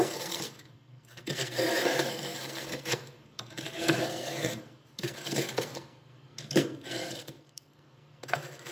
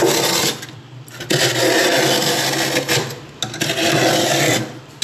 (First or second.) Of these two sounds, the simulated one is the first